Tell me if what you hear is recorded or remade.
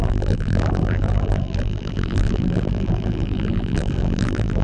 remade